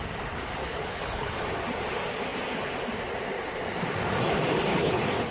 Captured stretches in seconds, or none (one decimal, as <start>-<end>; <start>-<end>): 0.0-0.6; 1.4-4.7